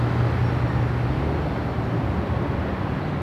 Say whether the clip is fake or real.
real